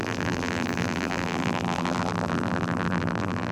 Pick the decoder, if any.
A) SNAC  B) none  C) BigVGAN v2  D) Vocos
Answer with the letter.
C